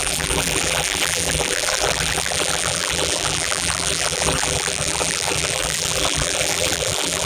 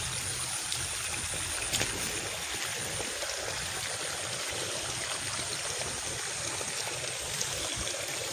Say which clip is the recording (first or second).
second